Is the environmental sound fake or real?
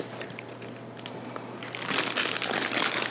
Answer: real